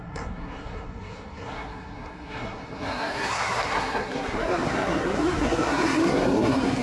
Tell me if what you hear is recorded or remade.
remade